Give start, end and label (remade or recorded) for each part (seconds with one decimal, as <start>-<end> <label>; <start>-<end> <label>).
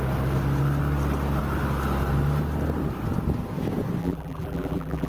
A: 0.0-4.0 recorded; 4.0-5.1 remade